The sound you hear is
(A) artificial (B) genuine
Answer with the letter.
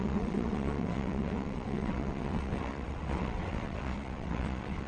A